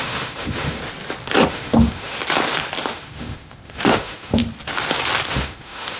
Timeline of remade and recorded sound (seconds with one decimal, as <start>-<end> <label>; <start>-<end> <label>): 0.0-0.8 remade; 0.8-1.5 recorded; 1.5-2.2 remade; 2.2-2.9 recorded; 2.9-4.4 remade; 4.4-5.3 recorded; 5.3-6.0 remade